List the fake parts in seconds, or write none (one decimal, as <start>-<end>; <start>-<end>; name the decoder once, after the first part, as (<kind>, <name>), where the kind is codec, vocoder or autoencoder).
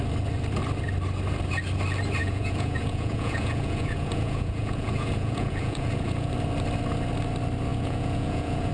2.2-6.3 (vocoder, Vocos); 7.7-8.7